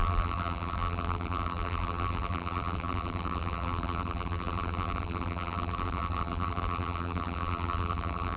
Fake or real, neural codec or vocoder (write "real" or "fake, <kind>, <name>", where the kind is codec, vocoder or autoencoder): fake, vocoder, BigVGAN v2